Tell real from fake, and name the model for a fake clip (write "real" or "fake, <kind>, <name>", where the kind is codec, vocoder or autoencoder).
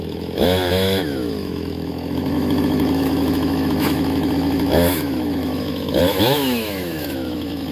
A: fake, autoencoder, DAC-VAE